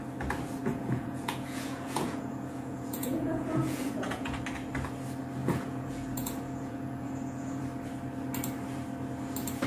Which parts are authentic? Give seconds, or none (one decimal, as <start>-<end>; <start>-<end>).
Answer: 0.0-0.6; 4.4-5.4; 7.6-9.7